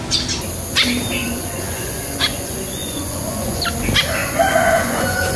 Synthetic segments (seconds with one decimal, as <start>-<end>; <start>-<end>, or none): 1.2-3.6; 4.2-5.4